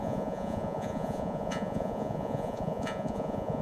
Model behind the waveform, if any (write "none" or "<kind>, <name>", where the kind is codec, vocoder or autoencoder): vocoder, Vocos